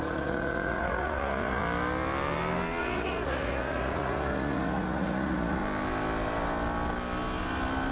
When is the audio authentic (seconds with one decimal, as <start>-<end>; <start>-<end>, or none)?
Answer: 1.6-2.8; 5.6-7.9